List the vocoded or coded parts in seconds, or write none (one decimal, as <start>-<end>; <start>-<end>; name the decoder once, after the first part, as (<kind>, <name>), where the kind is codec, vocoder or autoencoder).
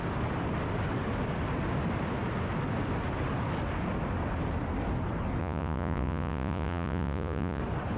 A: 5.4-7.6 (vocoder, Vocos)